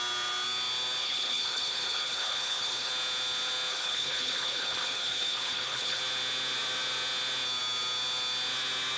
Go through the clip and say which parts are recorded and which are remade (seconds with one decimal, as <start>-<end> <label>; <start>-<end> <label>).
0.0-1.0 recorded; 1.0-2.9 remade; 2.9-3.7 recorded; 3.7-6.0 remade; 6.0-9.0 recorded